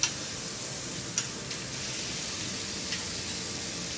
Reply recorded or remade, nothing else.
recorded